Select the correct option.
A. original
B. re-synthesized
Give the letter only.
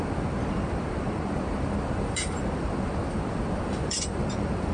B